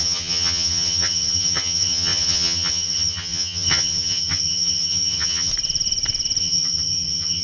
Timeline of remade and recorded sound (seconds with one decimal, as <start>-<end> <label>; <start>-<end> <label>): 0.0-5.5 remade; 5.5-6.4 recorded; 6.4-7.4 remade